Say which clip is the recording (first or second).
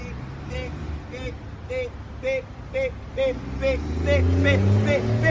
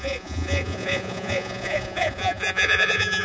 first